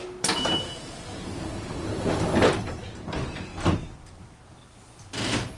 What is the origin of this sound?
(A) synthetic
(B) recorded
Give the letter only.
B